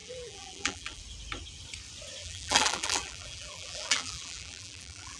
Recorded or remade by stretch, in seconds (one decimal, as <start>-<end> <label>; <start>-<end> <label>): 0.0-1.0 remade; 1.0-2.2 recorded; 2.2-5.2 remade